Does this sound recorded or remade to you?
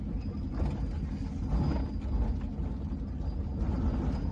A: recorded